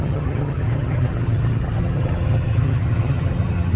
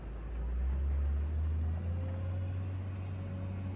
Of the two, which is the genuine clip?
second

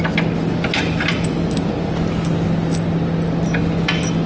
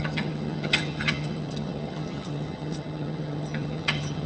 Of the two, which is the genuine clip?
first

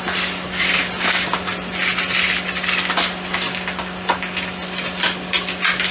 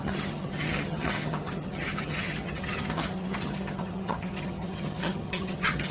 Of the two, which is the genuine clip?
first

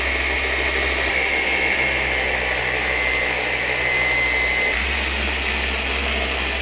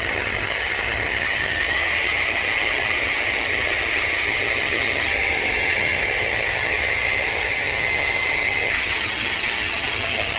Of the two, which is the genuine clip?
first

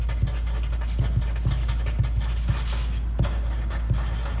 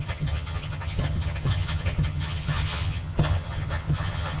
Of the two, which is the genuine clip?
first